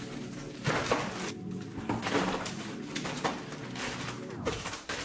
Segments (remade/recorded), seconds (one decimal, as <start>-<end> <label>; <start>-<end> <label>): 0.0-5.0 recorded